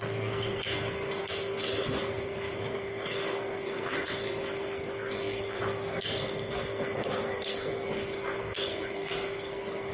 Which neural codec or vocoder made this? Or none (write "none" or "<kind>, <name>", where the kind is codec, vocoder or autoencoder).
codec, SNAC